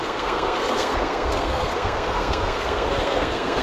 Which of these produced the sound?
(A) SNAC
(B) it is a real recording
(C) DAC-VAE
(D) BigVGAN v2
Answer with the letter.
A